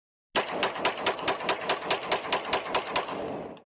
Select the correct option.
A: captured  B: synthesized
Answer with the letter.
A